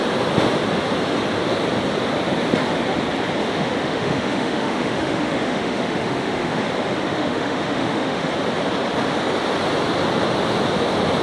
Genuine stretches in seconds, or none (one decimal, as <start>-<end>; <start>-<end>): 0.0-3.4; 6.6-7.1; 8.3-11.2

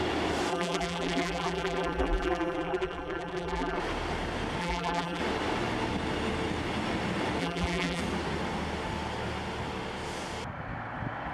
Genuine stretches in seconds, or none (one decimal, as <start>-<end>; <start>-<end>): 0.0-0.5; 3.8-4.6; 5.2-7.4; 8.0-11.3

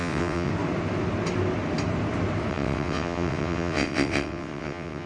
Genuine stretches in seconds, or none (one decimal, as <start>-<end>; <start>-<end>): 0.5-2.5

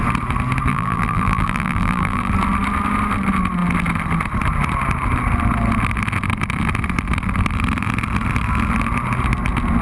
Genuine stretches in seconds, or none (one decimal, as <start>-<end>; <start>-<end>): 0.0-0.7; 2.3-9.8

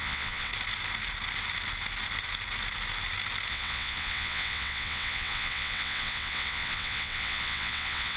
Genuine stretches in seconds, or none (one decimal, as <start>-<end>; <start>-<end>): 0.5-3.5

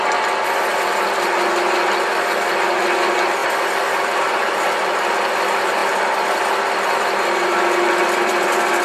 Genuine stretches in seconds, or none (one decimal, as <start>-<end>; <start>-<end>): 0.0-8.8

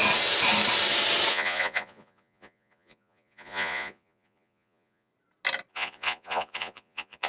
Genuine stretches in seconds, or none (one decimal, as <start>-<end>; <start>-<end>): 0.0-1.3; 5.1-5.7